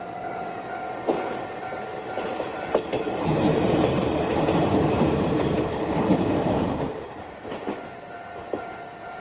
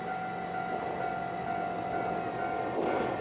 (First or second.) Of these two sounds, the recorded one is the second